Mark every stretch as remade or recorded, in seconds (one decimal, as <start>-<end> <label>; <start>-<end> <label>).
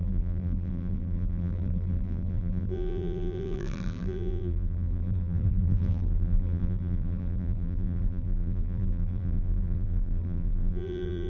0.0-11.3 remade